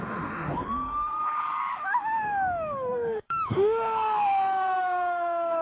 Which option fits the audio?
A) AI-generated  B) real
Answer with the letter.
A